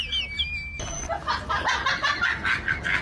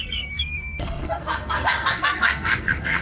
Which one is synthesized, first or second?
second